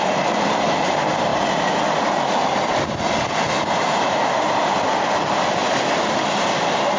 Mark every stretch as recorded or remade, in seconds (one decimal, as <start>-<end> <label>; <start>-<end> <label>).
0.0-7.0 recorded